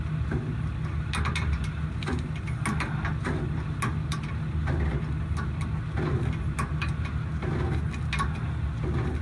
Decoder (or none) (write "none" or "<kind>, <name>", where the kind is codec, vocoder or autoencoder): none